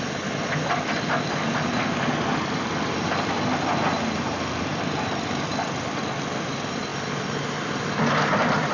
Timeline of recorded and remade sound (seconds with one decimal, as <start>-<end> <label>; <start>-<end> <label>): 0.0-8.7 recorded